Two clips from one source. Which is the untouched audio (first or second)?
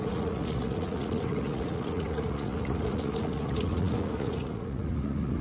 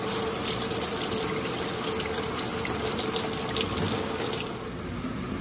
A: second